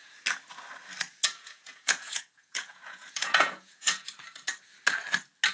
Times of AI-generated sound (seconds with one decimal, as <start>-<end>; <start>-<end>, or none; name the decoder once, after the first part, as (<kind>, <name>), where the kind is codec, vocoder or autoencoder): 1.2-4.0 (vocoder, Vocos)